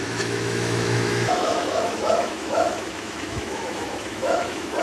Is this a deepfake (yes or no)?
yes